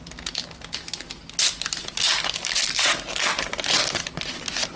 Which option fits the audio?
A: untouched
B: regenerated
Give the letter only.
A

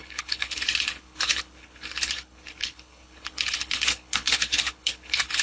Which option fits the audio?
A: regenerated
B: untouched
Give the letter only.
A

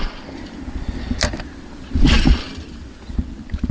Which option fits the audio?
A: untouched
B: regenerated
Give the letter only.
A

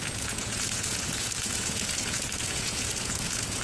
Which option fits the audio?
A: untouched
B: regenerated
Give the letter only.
B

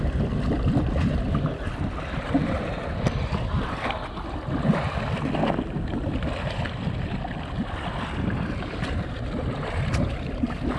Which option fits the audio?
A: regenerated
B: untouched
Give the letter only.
B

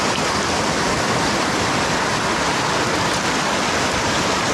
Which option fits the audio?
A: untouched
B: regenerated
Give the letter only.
A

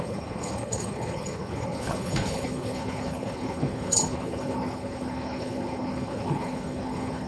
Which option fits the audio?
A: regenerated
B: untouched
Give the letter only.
A